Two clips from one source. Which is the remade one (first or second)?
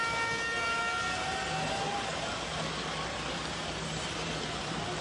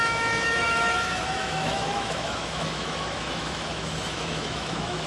second